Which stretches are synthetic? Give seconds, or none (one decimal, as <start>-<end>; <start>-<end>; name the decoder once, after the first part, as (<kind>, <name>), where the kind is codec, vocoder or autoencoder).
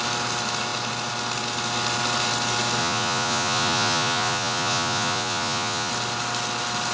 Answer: 2.8-5.9 (vocoder, Vocos)